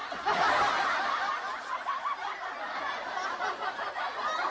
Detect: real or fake real